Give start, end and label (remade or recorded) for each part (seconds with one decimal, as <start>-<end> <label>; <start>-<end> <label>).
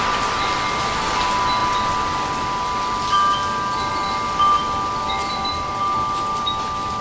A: 0.0-5.2 recorded; 5.2-7.0 remade